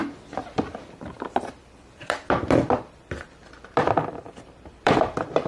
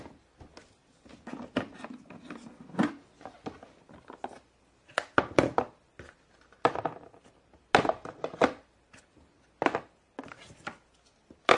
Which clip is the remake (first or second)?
first